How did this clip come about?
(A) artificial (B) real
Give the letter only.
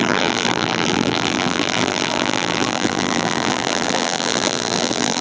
A